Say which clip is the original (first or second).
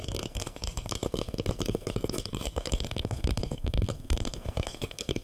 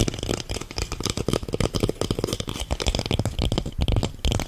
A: second